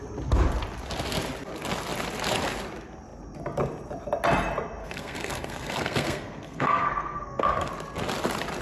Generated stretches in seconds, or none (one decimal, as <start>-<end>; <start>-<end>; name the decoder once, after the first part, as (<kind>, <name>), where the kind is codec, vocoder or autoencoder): 4.8-7.7 (codec, SNAC)